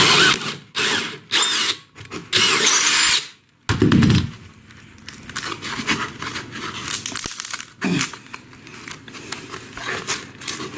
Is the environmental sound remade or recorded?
recorded